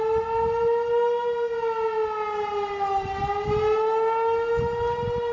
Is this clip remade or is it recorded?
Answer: recorded